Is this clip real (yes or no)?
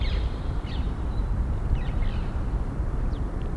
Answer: no